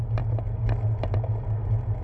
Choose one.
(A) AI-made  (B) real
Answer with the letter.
B